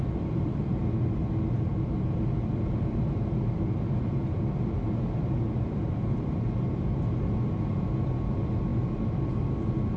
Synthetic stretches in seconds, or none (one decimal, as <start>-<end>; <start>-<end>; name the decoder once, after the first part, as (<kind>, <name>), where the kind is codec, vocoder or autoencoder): 0.0-0.8 (vocoder, BigVGAN v2); 1.7-10.0